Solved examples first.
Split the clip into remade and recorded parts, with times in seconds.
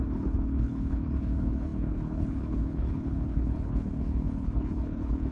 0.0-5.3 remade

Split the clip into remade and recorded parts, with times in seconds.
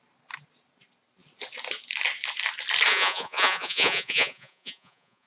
0.0-2.9 recorded; 2.9-5.3 remade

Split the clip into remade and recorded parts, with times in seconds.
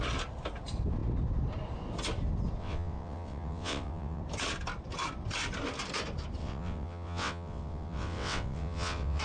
0.0-2.6 recorded; 2.6-4.2 remade; 4.2-6.4 recorded; 6.4-9.2 remade